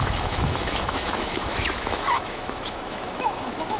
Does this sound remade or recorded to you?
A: remade